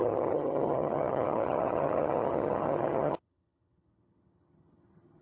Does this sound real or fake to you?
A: fake